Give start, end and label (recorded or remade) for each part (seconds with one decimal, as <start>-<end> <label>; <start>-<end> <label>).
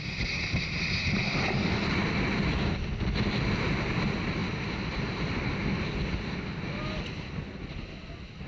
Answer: 0.0-8.5 recorded